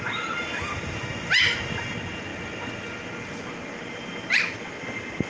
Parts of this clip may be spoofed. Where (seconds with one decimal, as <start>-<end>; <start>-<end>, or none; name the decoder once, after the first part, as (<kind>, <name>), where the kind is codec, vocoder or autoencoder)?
none